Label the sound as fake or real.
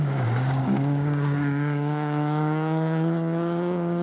fake